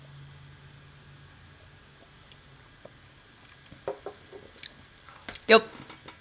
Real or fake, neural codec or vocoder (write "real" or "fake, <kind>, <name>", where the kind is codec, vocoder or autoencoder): real